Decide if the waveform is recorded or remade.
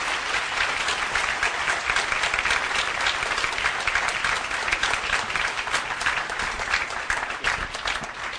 recorded